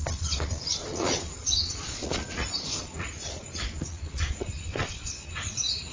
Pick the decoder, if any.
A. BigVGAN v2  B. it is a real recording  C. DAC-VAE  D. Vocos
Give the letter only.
D